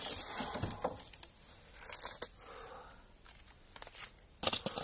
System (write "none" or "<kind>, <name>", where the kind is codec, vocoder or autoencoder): none